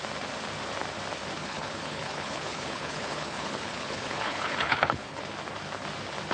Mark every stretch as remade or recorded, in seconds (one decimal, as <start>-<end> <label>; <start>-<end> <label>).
0.0-1.4 recorded; 1.4-5.2 remade; 5.2-6.3 recorded